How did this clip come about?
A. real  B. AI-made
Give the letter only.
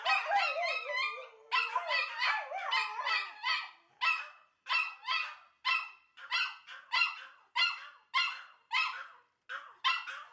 A